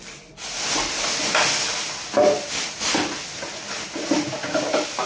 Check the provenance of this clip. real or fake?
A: real